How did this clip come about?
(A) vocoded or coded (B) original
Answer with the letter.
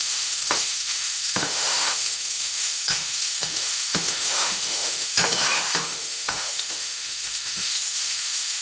A